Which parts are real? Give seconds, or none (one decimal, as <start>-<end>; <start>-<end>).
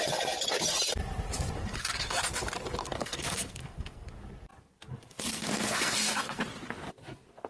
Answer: 0.0-1.6; 2.2-2.8; 4.1-5.3; 6.4-7.5